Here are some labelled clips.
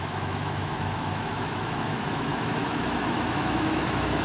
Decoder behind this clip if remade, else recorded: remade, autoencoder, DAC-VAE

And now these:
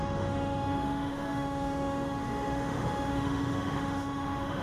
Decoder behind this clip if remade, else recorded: remade, autoencoder, DAC-VAE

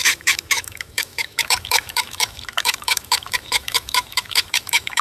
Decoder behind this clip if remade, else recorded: remade, autoencoder, DAC-VAE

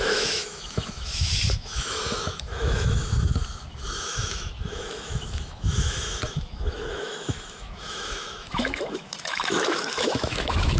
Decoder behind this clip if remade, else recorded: remade, autoencoder, DAC-VAE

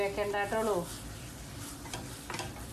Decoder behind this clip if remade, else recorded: recorded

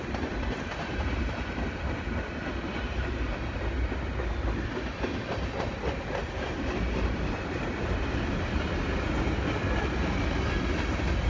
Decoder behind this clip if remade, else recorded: recorded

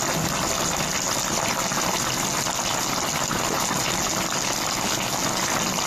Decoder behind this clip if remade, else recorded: recorded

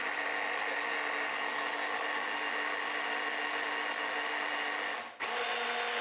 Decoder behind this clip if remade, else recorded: recorded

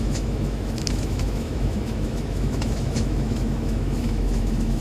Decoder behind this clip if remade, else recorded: remade, autoencoder, DAC-VAE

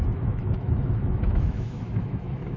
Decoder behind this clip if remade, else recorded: remade, autoencoder, DAC-VAE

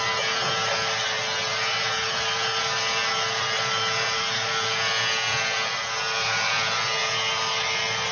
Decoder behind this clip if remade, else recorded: recorded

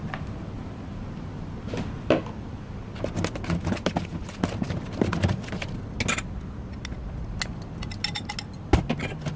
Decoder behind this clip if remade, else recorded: recorded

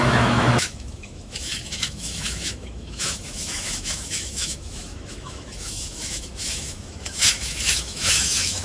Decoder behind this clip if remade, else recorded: remade, autoencoder, DAC-VAE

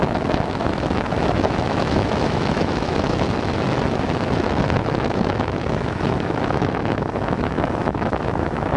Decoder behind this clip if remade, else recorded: remade, autoencoder, DAC-VAE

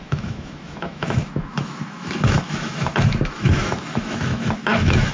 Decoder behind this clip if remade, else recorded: remade, autoencoder, DAC-VAE